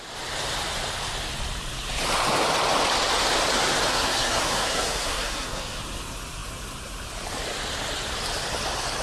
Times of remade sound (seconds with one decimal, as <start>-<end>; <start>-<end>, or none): 3.9-5.8